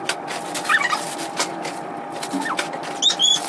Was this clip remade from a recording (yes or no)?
no